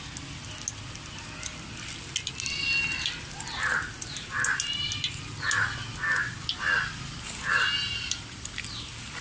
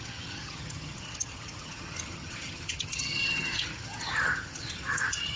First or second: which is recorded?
first